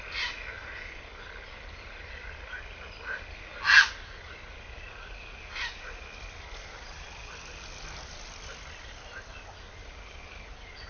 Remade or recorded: recorded